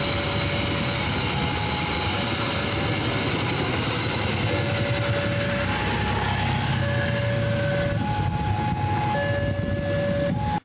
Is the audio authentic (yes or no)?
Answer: yes